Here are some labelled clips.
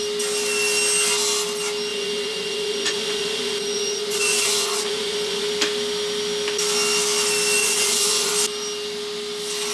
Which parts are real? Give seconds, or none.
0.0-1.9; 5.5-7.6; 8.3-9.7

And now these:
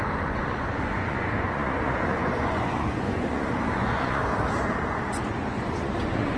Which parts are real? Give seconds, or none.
4.2-4.9

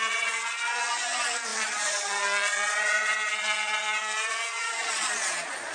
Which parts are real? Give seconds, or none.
none

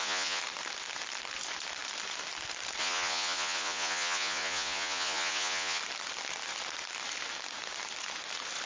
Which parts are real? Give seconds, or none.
0.4-2.8; 5.8-8.7

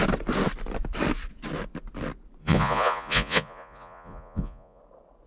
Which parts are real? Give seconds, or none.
0.0-2.4; 4.8-5.3